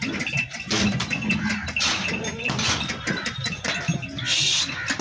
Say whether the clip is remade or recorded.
recorded